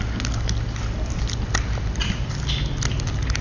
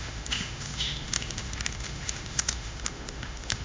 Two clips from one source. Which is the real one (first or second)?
first